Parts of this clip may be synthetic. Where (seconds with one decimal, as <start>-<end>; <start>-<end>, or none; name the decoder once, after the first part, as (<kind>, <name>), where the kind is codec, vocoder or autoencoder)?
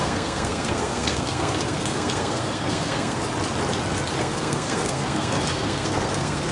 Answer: 0.0-3.2 (codec, SNAC); 4.2-6.5